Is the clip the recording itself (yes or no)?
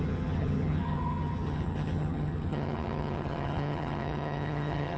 no